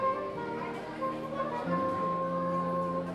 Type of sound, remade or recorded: recorded